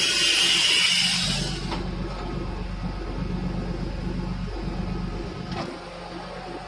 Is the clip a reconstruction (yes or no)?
no